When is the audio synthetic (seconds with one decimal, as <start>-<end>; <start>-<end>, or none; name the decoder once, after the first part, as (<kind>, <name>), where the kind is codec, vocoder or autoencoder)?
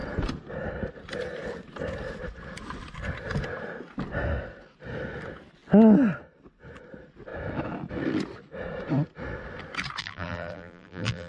10.0-11.3 (vocoder, BigVGAN v2)